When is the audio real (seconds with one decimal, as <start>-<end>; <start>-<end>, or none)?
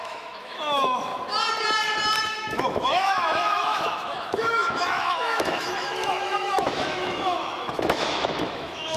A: 1.1-2.2